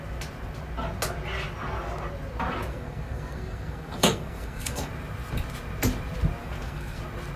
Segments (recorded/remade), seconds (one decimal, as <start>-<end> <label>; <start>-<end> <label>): 0.0-2.7 recorded; 2.7-4.9 remade; 4.9-6.4 recorded; 6.4-7.0 remade; 7.0-7.4 recorded